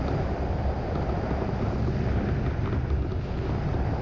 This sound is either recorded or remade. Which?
recorded